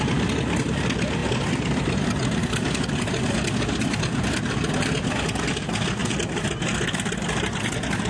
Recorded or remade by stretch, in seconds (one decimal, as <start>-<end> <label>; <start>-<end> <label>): 0.0-8.1 recorded